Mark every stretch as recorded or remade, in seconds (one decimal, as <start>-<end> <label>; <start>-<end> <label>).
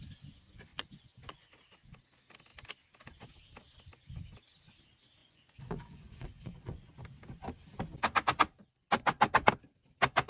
0.0-0.7 recorded; 0.7-1.5 remade; 1.5-5.2 recorded; 5.2-6.9 remade; 6.9-10.3 recorded